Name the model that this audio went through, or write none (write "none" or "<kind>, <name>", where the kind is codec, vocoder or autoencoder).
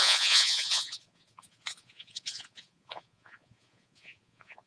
vocoder, Vocos